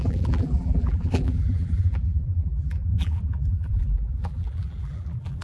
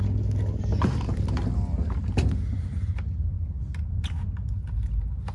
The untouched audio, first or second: second